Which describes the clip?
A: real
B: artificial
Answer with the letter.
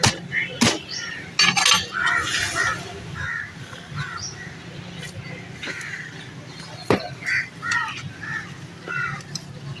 A